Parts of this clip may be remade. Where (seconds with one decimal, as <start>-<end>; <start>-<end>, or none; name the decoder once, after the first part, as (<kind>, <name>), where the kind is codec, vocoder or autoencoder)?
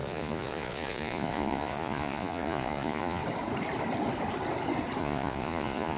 0.0-3.2 (vocoder, Vocos); 5.0-6.0